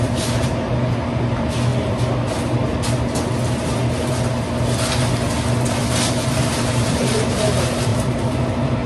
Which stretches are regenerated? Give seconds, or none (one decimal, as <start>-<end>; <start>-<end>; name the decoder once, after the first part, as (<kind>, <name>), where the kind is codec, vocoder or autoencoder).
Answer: 0.0-1.7 (vocoder, BigVGAN v2); 6.1-8.9

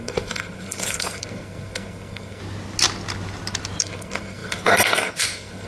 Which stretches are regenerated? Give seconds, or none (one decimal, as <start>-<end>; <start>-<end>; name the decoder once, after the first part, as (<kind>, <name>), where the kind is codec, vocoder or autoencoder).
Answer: 0.0-2.4 (codec, SNAC); 3.8-5.7